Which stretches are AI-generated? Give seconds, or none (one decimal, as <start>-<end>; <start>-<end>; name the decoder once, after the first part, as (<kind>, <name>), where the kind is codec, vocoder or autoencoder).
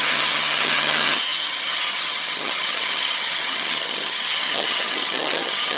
0.0-5.8 (vocoder, HiFi-GAN)